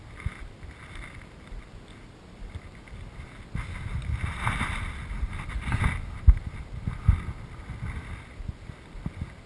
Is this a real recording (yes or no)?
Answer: yes